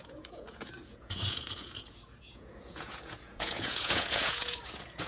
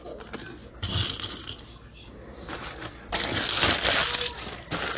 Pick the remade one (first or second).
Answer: first